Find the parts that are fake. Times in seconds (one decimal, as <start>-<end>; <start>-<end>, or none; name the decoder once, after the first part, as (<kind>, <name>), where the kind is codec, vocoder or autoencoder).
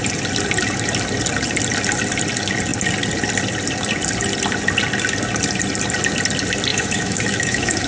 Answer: 6.7-7.9 (autoencoder, DAC-VAE)